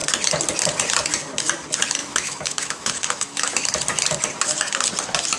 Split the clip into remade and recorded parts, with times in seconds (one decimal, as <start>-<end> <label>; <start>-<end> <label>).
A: 0.0-2.0 recorded; 2.0-3.5 remade; 3.5-5.4 recorded